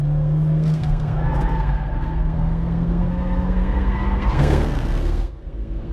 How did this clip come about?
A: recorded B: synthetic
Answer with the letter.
B